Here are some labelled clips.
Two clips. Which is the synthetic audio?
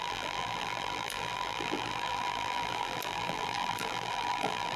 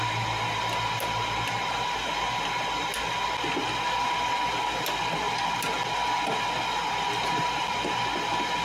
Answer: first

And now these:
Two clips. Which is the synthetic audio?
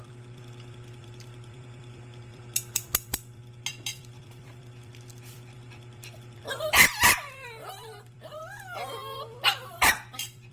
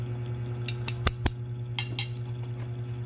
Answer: first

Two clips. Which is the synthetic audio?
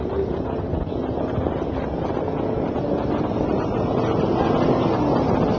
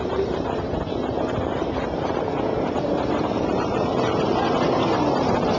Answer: second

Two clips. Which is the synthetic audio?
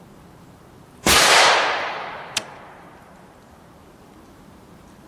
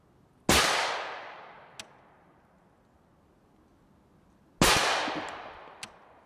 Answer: first